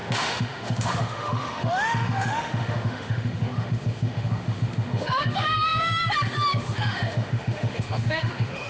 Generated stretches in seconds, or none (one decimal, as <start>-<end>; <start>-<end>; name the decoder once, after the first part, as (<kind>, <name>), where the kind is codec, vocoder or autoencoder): 0.0-8.7 (autoencoder, DAC-VAE)